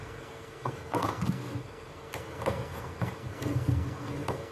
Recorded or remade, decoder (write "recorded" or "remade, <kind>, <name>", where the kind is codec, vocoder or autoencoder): remade, codec, SNAC